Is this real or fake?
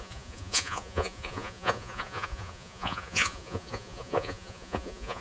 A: fake